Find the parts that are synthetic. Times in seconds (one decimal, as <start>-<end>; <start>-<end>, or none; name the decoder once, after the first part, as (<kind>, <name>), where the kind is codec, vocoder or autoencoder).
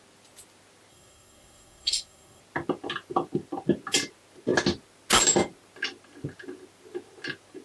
0.9-2.4 (codec, SNAC)